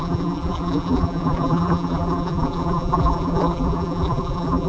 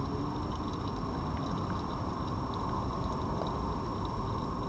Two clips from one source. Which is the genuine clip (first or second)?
second